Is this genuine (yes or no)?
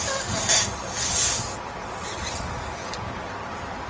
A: yes